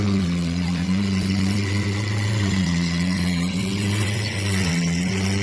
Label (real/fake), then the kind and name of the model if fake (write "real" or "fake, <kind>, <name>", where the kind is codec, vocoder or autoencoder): fake, vocoder, WaveNeXt